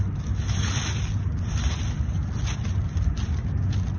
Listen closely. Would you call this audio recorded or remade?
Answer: recorded